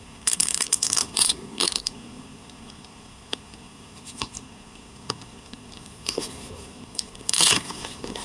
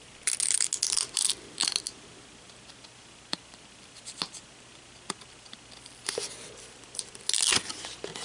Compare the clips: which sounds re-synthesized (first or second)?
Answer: first